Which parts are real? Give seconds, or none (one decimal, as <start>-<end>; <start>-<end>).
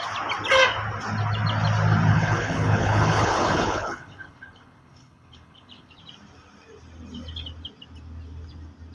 0.0-2.1; 6.0-8.9